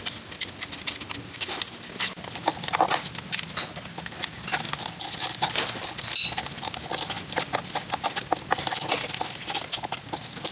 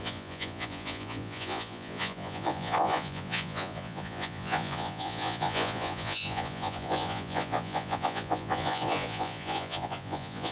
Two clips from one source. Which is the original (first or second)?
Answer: first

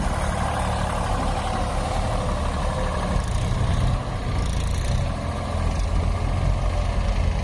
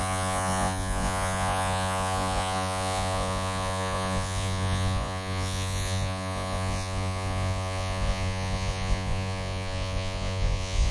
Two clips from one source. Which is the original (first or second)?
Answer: first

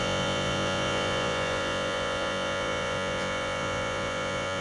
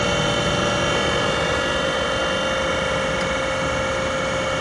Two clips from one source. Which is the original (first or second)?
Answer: second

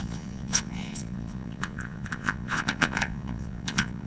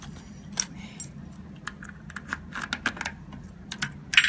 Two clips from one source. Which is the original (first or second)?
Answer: second